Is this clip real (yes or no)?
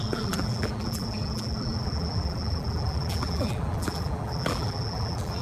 no